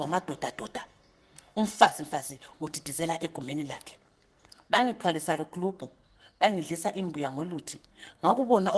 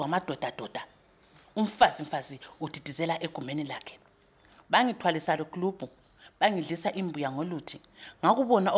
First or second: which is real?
second